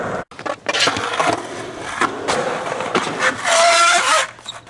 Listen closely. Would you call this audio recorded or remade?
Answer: recorded